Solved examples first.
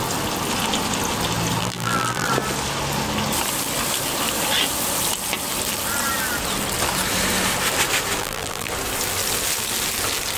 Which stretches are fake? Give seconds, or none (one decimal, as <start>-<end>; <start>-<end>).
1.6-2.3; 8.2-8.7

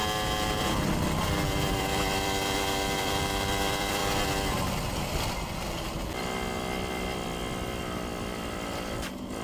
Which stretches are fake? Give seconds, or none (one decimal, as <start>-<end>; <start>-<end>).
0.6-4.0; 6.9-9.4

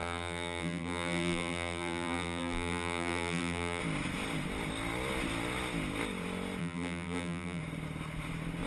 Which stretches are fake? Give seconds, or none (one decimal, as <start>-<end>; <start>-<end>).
0.0-3.8; 6.6-7.6

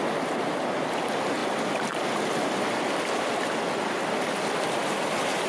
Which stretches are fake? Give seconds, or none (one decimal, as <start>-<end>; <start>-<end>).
1.4-4.7

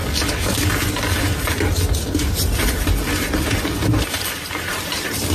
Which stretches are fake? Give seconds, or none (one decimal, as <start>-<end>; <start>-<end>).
3.8-5.3

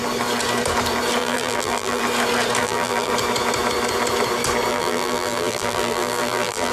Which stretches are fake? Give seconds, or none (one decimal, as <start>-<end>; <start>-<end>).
1.2-2.0; 2.6-3.1; 4.7-6.7

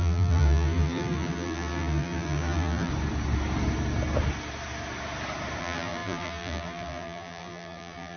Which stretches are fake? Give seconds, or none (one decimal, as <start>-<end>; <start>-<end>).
0.0-2.9; 5.6-8.2